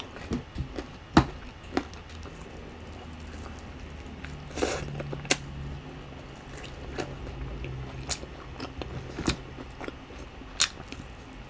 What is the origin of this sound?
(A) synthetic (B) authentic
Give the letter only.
B